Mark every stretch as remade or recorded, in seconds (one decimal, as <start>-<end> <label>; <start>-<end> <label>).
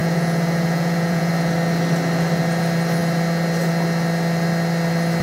0.0-1.3 remade; 1.3-5.2 recorded